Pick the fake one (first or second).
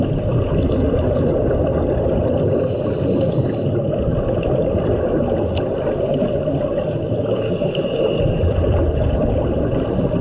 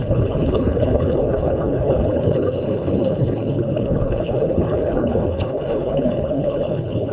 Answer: second